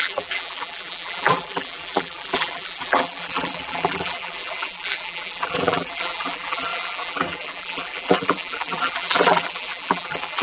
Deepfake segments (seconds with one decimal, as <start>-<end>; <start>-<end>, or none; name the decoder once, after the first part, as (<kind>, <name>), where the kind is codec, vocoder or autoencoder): 0.0-10.4 (vocoder, BigVGAN v2)